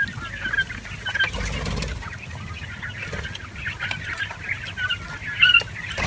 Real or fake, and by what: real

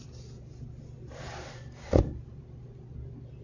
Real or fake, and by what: real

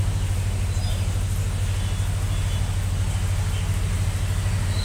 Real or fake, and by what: real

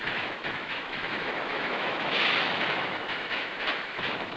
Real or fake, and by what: fake, autoencoder, DAC-VAE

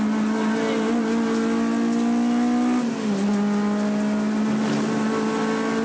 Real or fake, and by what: real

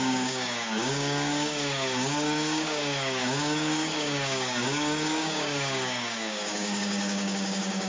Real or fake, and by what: fake, codec, DAC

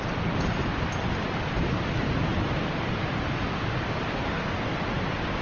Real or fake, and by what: real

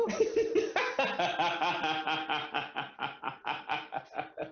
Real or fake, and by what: real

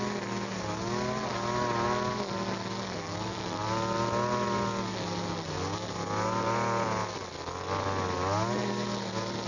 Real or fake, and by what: real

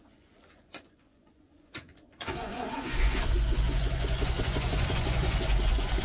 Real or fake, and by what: fake, vocoder, Vocos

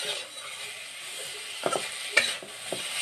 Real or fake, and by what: real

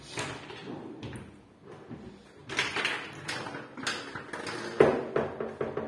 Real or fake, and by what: real